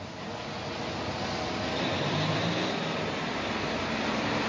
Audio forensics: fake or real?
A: fake